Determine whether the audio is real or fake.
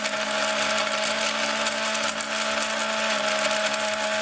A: real